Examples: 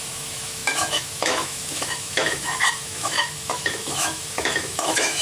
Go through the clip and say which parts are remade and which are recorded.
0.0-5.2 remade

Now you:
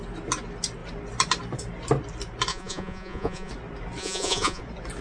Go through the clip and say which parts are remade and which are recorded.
0.0-2.5 recorded; 2.5-3.5 remade; 3.5-4.0 recorded; 4.0-4.6 remade; 4.6-5.0 recorded

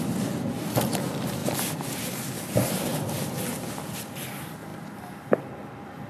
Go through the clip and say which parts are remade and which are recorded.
0.0-2.9 recorded; 2.9-3.4 remade; 3.4-4.7 recorded; 4.7-5.4 remade; 5.4-6.1 recorded

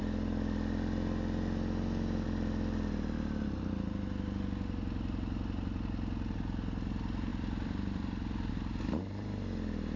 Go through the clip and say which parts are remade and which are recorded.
0.0-7.3 recorded; 7.3-8.5 remade; 8.5-10.0 recorded

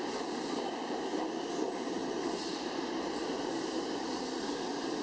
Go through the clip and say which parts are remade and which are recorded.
0.0-1.1 recorded; 1.1-1.6 remade; 1.6-5.0 recorded